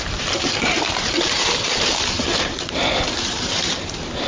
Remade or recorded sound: remade